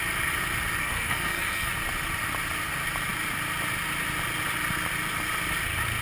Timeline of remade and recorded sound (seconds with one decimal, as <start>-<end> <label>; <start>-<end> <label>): 0.0-0.8 recorded; 0.8-1.7 remade; 1.7-6.0 recorded